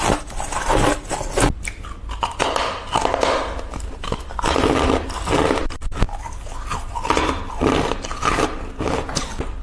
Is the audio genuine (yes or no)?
yes